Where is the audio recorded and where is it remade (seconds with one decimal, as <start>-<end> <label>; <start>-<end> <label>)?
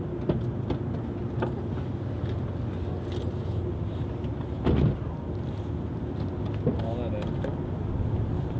0.0-8.6 recorded